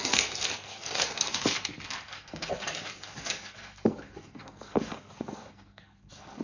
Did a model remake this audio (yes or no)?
yes